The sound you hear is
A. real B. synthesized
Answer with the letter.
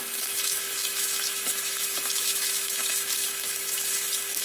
B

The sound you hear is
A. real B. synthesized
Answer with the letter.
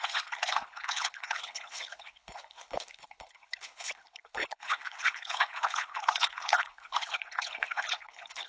B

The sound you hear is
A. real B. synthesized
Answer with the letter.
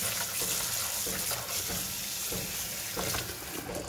A